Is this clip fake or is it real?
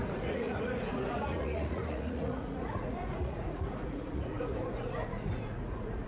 fake